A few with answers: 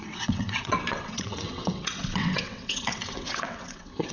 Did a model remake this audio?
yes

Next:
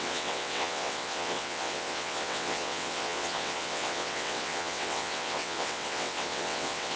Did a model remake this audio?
yes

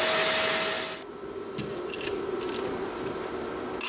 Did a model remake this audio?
no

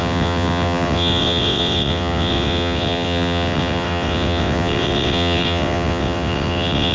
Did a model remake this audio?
yes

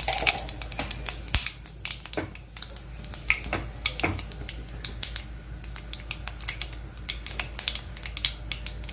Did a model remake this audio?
no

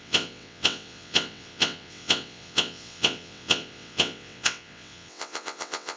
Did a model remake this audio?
yes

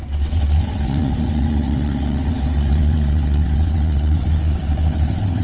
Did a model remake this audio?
yes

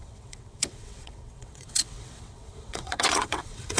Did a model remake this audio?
yes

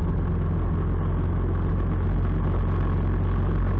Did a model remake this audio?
no